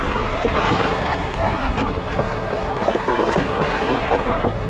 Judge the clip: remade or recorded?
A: remade